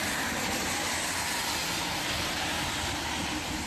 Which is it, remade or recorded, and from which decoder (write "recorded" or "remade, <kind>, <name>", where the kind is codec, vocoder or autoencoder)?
recorded